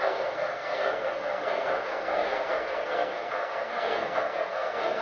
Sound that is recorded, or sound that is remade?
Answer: remade